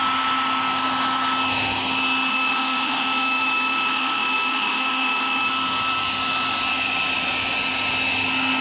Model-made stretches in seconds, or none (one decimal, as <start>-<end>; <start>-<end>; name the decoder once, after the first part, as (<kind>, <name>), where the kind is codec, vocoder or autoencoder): 2.3-5.5 (autoencoder, DAC-VAE)